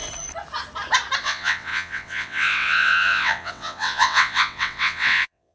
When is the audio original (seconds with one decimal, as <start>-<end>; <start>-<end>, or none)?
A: 0.0-1.2